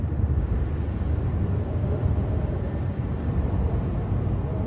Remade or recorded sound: recorded